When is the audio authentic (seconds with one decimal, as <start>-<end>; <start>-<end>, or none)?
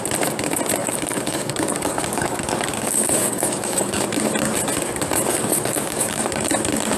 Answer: 0.0-0.8; 4.0-5.3; 6.3-7.0